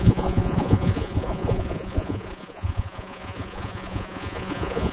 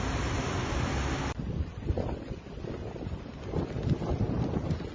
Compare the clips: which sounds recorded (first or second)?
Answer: second